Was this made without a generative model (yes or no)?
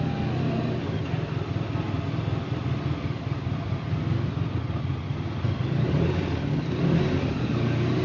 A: yes